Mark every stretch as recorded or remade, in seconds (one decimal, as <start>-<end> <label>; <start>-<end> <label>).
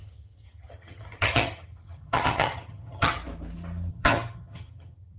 0.0-3.2 remade; 3.2-3.9 recorded; 3.9-5.2 remade